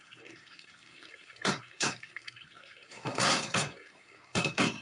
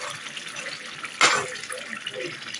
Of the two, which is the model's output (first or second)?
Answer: first